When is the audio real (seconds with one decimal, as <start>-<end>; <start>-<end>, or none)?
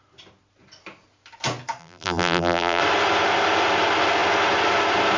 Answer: 0.0-1.8; 2.8-5.2